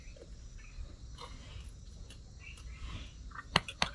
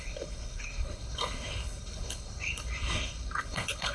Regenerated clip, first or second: second